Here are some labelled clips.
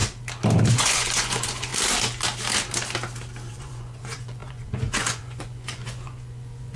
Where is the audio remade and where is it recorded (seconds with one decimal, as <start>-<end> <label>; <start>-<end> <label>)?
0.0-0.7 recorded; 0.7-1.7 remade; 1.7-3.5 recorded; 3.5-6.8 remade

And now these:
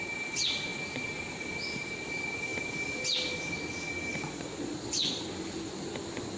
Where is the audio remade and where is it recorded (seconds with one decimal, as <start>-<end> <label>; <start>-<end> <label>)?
0.0-4.1 recorded; 4.1-5.2 remade; 5.2-6.4 recorded

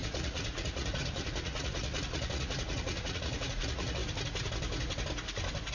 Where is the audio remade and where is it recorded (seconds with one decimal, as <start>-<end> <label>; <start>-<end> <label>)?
0.0-4.0 remade; 4.0-5.7 recorded

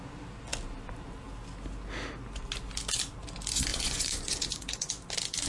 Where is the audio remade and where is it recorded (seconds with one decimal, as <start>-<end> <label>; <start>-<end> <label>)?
0.0-3.7 recorded; 3.7-4.9 remade; 4.9-5.5 recorded